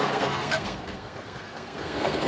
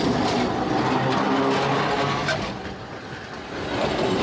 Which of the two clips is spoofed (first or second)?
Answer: first